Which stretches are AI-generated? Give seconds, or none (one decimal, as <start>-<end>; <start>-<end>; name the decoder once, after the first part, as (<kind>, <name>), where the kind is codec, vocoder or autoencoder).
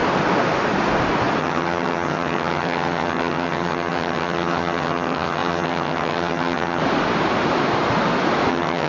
1.4-6.8 (vocoder, HiFi-GAN); 8.5-8.9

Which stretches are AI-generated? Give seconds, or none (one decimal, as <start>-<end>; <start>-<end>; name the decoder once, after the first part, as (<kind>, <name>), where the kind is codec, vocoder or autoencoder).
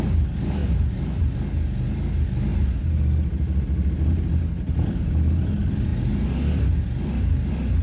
none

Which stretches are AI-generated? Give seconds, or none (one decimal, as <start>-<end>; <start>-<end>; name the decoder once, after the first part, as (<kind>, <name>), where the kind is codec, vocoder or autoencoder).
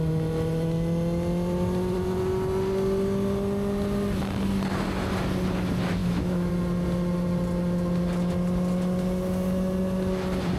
6.0-6.5 (autoencoder, DAC-VAE)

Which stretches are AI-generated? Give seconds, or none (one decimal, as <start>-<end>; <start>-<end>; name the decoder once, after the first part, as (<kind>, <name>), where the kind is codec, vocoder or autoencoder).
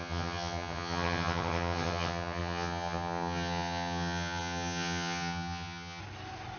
0.0-6.0 (vocoder, HiFi-GAN)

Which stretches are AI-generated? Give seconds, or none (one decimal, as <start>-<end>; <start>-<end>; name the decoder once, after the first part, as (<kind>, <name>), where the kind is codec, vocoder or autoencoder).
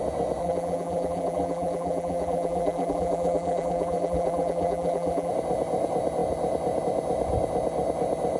0.4-5.3 (vocoder, BigVGAN v2)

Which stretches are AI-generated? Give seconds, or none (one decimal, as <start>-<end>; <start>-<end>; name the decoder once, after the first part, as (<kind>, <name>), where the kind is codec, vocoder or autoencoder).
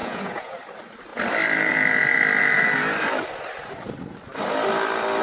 0.0-0.6 (vocoder, Vocos)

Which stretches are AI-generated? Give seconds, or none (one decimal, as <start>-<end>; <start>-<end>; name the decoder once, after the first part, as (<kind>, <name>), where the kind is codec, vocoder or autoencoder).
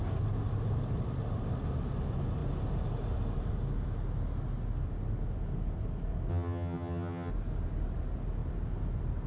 6.3-7.3 (vocoder, HiFi-GAN)